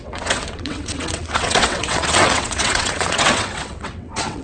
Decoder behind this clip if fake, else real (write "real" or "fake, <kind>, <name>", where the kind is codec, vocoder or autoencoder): fake, vocoder, WaveNeXt